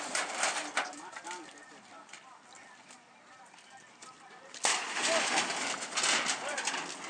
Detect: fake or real real